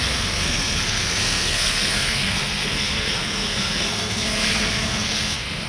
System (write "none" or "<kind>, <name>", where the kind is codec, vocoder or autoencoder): codec, SNAC